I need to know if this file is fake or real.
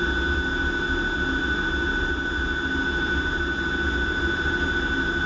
real